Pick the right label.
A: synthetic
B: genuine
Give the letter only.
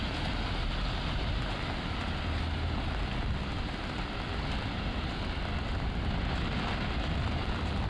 B